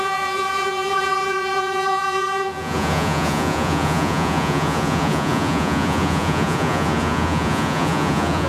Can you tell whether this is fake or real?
fake